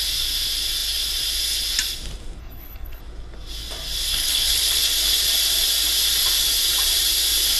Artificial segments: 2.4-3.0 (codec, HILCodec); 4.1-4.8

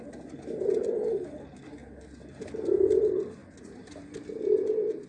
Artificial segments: none

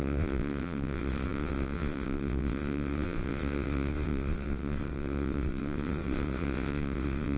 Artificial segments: 0.0-7.4 (vocoder, WaveNeXt)

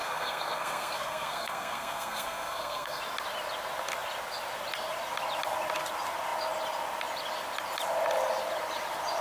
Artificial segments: 0.0-3.0 (codec, SNAC)

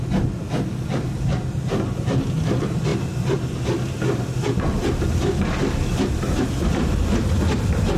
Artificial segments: none

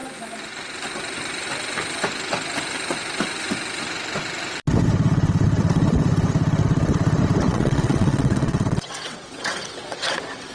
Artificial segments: 7.5-10.5 (vocoder, WaveNeXt)